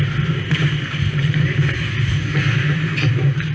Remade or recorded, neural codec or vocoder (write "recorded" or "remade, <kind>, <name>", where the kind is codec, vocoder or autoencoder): recorded